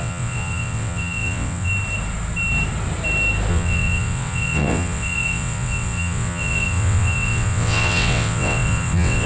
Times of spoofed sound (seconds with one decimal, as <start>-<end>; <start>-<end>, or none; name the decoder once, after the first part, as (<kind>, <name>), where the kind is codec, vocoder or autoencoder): 0.0-1.7 (vocoder, WaveNeXt); 3.5-9.3